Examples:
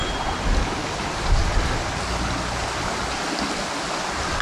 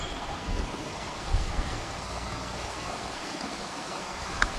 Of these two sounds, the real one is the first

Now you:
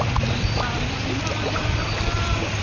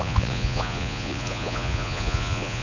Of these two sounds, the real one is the first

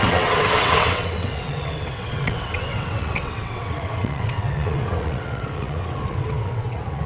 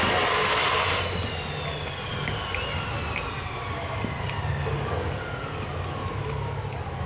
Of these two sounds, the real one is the second